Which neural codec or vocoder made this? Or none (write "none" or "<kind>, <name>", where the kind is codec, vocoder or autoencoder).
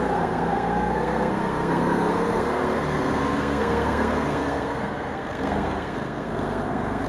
codec, SNAC